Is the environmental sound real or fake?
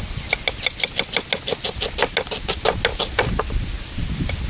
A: real